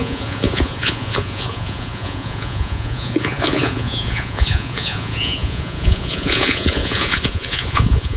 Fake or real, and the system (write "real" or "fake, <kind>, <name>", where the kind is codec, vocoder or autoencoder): fake, vocoder, Vocos